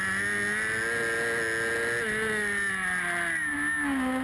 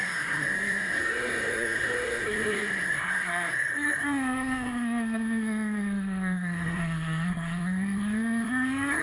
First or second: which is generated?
second